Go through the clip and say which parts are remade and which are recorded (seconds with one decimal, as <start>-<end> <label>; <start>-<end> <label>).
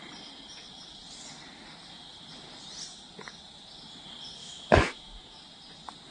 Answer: 0.0-4.4 recorded; 4.4-5.4 remade; 5.4-6.1 recorded